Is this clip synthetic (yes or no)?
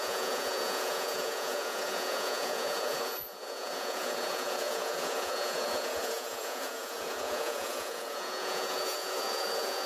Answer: yes